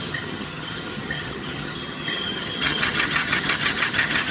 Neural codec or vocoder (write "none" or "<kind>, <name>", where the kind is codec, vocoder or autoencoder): vocoder, HiFi-GAN